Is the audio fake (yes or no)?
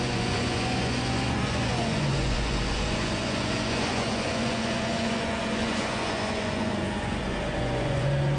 yes